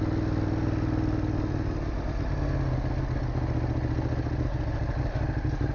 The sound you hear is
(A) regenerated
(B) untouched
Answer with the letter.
B